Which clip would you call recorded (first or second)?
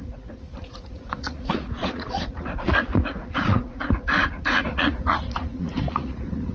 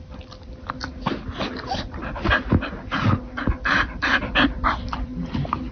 second